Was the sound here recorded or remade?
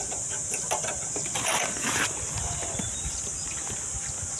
recorded